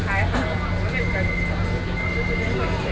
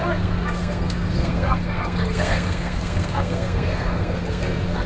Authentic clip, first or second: first